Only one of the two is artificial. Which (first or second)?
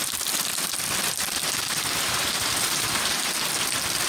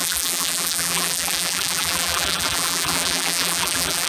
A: second